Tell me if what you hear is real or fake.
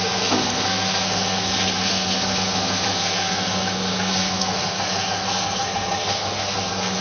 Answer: fake